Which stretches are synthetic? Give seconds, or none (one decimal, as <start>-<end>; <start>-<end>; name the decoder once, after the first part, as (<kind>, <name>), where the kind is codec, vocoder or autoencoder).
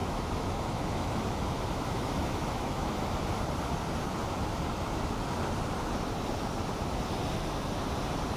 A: 0.0-3.3 (autoencoder, DAC-VAE)